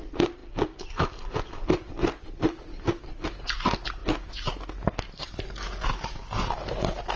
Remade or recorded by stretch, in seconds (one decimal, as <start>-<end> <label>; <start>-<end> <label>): 0.0-7.2 recorded